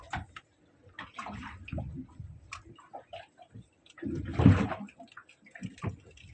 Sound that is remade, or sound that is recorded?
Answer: recorded